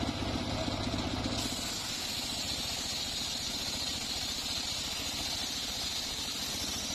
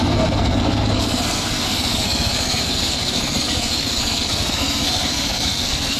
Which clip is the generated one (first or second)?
second